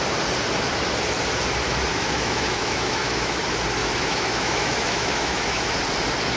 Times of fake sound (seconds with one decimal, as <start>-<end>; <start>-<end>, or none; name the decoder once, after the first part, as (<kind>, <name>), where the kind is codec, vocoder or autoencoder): 1.9-3.4 (autoencoder, DAC-VAE); 3.8-5.7